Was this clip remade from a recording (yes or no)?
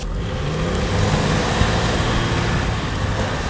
no